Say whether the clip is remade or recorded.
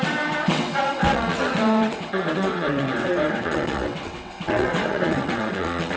remade